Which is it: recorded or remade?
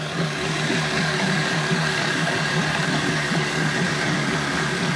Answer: remade